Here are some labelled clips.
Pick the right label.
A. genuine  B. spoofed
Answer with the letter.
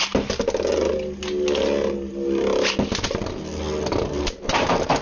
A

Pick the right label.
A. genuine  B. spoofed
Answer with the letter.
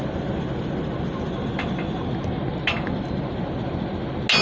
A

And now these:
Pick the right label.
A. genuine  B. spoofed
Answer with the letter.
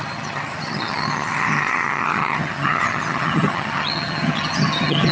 B